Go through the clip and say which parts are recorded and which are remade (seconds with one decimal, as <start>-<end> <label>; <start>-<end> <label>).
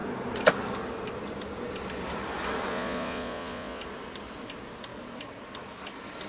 0.0-2.7 recorded; 2.7-3.8 remade; 3.8-6.3 recorded